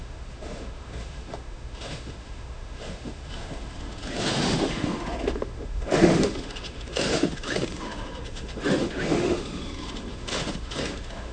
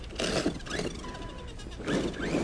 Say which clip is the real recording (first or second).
second